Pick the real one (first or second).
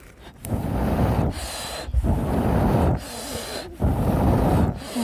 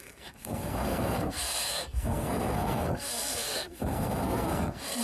first